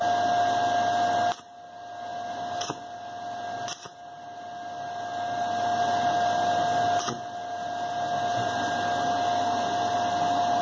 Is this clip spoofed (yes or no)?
no